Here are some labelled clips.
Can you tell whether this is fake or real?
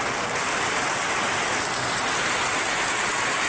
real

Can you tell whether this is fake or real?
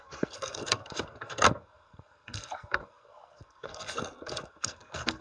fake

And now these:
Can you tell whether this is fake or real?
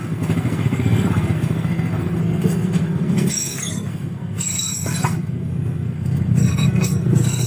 fake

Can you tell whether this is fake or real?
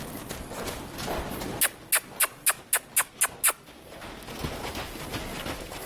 real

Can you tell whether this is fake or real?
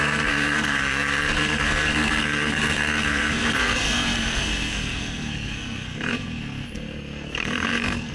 fake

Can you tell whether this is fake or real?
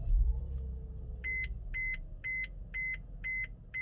real